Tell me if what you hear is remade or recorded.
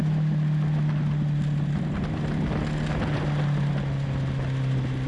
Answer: recorded